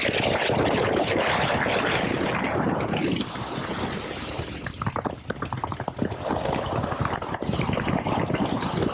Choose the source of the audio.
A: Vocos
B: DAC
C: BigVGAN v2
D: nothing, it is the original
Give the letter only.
D